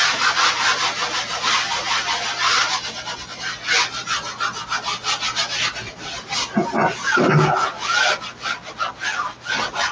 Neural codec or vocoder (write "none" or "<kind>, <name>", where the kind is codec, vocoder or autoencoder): none